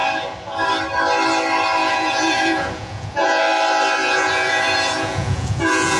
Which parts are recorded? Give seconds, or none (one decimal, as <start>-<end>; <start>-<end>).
0.0-1.8; 3.4-4.0